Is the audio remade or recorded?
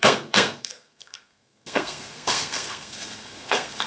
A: remade